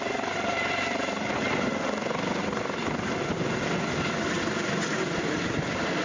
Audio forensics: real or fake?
real